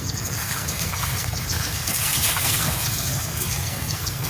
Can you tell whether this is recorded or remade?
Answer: remade